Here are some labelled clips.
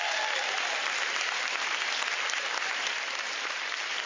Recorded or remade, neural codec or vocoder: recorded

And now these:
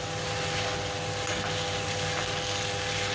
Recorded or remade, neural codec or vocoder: recorded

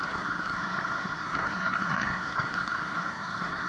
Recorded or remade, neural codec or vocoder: remade, codec, SNAC